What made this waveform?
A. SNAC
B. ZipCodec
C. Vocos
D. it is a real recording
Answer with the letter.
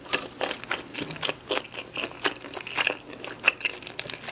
D